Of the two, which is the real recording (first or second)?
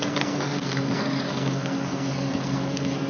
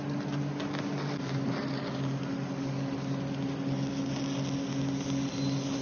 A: second